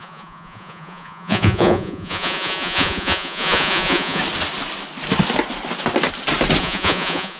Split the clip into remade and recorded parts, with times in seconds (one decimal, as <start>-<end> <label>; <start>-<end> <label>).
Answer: 0.0-4.2 remade; 4.2-6.6 recorded; 6.6-7.4 remade